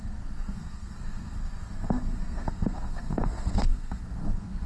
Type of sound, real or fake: fake